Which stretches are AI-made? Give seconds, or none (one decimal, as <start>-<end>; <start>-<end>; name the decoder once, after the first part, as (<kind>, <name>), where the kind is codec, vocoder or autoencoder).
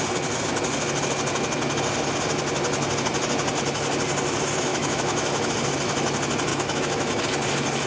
4.7-5.5 (autoencoder, DAC-VAE); 6.5-7.2